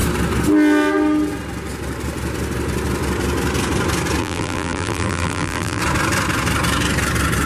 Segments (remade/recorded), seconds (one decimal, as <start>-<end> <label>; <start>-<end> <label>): 0.0-4.2 recorded; 4.2-5.8 remade; 5.8-7.5 recorded